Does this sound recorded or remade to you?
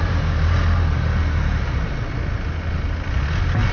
recorded